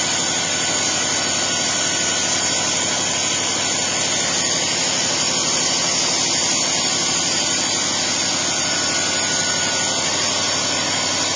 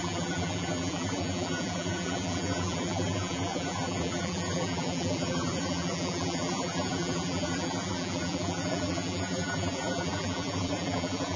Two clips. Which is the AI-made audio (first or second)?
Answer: second